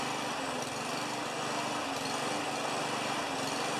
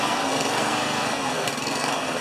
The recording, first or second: first